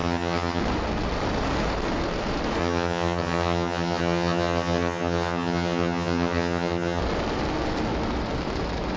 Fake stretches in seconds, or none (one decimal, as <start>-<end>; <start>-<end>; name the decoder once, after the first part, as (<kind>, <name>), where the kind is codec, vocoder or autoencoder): 0.0-0.6 (vocoder, HiFi-GAN); 2.6-7.0